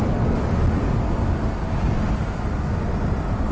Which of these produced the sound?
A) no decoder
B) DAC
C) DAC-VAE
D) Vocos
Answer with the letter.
A